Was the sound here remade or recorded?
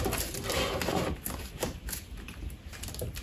recorded